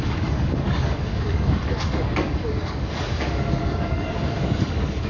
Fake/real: fake